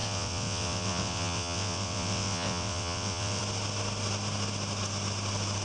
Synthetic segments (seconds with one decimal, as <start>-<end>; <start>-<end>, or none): 0.0-3.4